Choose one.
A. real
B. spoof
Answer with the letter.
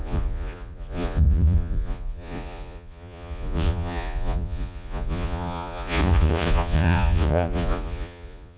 B